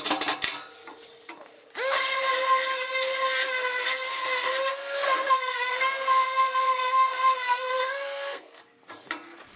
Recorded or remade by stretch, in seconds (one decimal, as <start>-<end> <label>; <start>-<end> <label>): 0.0-4.7 recorded; 4.7-8.6 remade; 8.6-9.6 recorded